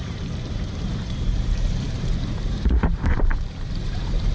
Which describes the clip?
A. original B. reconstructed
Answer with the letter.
B